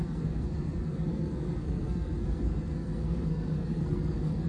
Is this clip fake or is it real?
fake